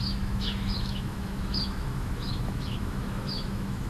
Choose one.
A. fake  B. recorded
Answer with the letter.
A